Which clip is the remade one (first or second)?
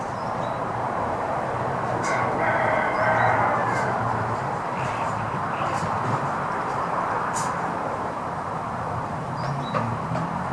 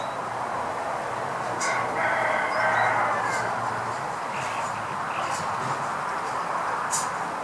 first